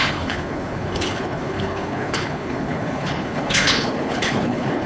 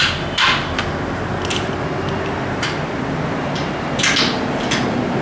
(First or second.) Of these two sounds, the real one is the second